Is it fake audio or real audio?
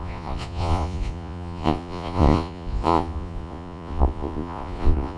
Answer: fake